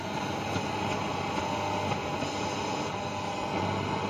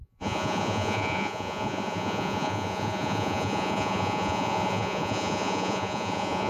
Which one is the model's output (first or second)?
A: second